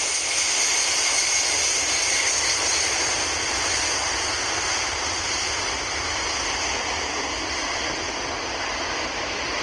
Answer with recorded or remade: remade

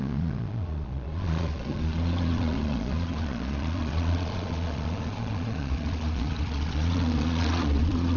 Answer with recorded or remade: remade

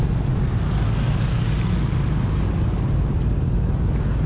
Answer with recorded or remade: recorded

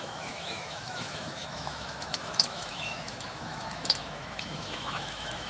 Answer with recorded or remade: remade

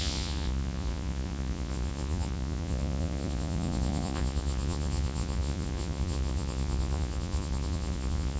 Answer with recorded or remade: remade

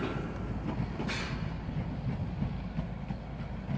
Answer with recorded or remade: recorded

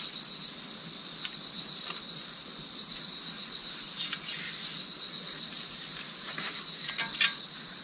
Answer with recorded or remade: recorded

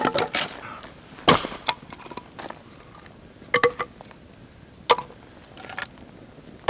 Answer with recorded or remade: recorded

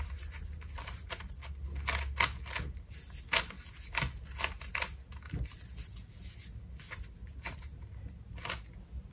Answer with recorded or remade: recorded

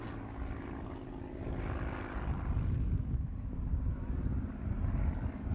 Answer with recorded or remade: recorded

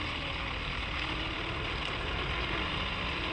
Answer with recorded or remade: recorded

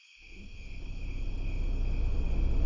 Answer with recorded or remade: recorded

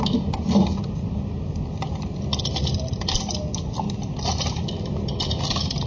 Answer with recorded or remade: recorded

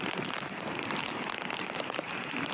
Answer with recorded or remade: remade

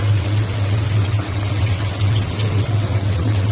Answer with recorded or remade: remade